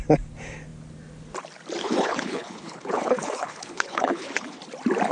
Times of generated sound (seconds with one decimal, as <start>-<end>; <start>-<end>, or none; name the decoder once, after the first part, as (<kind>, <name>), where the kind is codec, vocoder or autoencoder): 1.8-4.6 (codec, HILCodec)